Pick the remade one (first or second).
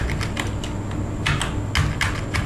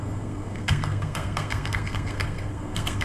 second